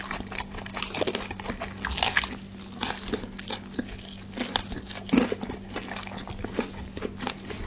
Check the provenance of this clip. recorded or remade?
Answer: recorded